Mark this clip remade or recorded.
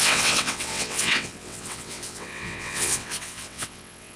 remade